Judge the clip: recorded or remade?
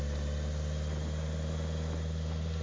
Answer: recorded